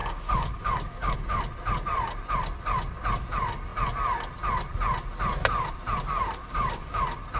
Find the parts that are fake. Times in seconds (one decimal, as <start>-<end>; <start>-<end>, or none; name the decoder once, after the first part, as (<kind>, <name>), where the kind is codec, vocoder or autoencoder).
0.0-1.4 (codec, DAC); 6.4-7.0